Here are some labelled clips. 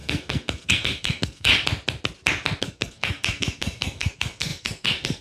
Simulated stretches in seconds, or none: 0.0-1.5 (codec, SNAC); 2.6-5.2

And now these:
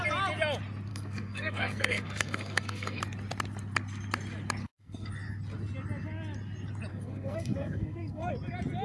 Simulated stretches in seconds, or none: 0.9-3.0 (codec, SNAC); 4.6-5.1; 6.9-8.3

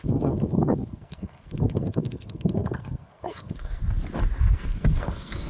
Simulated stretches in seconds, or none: 0.0-3.8 (codec, SNAC); 4.4-5.5

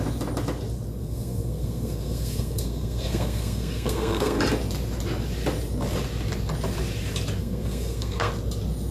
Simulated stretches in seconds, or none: 1.0-4.4 (codec, SNAC); 7.4-8.3

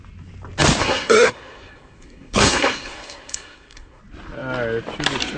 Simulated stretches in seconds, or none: 0.8-4.0 (codec, SNAC)

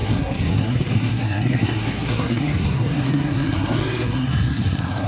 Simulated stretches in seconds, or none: 0.0-5.1 (codec, SNAC)